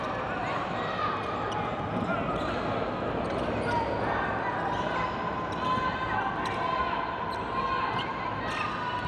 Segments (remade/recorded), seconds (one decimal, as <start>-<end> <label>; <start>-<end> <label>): 0.0-9.1 recorded